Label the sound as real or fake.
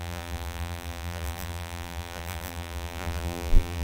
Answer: fake